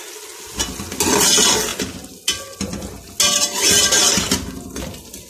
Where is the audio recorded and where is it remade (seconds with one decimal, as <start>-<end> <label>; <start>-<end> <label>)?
0.0-5.3 recorded